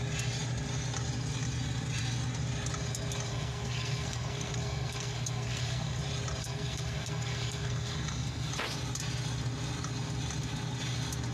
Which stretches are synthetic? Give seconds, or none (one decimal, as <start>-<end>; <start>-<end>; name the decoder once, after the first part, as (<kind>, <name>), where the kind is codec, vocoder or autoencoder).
3.3-6.0 (codec, SNAC); 6.4-8.5